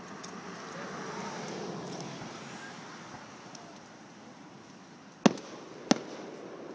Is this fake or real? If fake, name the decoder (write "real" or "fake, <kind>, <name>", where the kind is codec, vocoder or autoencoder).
real